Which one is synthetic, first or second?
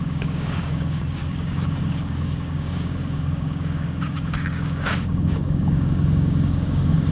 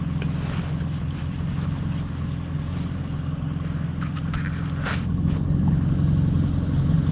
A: first